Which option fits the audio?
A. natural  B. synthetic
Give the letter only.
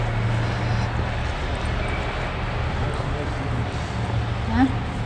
A